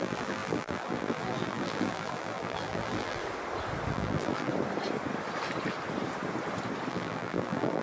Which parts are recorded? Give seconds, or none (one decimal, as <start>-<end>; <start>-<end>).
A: 3.2-3.9; 4.5-6.9